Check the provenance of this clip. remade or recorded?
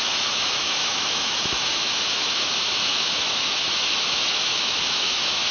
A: remade